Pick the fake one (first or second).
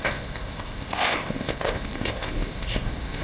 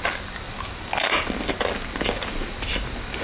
first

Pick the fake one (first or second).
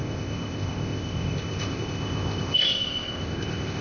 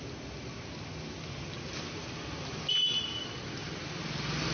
first